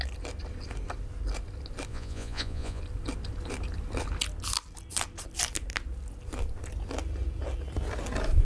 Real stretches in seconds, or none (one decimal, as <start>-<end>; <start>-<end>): 0.0-1.9; 2.8-8.4

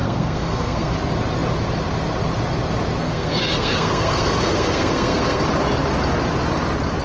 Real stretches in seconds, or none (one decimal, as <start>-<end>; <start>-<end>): 0.9-3.0; 5.4-7.0